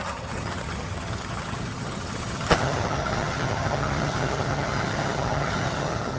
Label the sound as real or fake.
fake